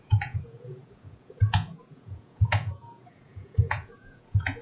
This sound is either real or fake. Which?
fake